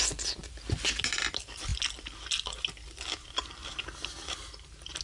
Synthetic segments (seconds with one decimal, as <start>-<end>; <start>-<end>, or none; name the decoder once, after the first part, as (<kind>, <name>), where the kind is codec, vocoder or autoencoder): none